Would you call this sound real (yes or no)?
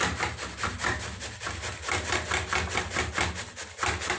yes